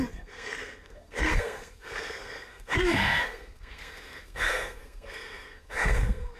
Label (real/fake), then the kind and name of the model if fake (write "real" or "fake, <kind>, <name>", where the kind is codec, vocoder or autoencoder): fake, codec, SNAC